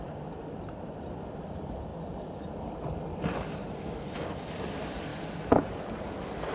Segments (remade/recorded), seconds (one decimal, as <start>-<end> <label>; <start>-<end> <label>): 0.0-1.9 remade; 1.9-4.6 recorded; 4.6-5.1 remade; 5.1-5.7 recorded; 5.7-6.5 remade